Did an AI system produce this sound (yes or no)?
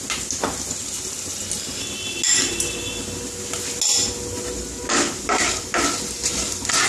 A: no